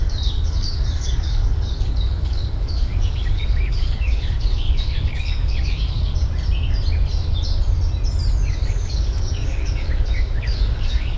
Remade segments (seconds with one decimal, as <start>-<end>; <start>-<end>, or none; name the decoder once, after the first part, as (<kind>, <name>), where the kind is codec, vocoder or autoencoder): 0.0-6.1 (codec, DAC); 8.5-11.2